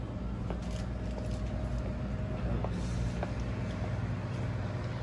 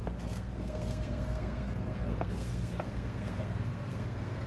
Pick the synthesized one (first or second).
second